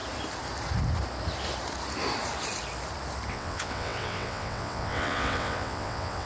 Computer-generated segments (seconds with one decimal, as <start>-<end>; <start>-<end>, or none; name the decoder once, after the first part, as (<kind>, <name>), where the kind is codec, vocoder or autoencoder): 3.3-6.3 (vocoder, WaveNeXt)